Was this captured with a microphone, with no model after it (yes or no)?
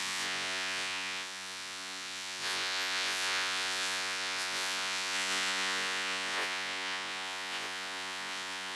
no